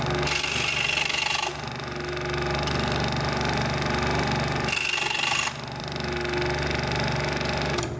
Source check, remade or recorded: recorded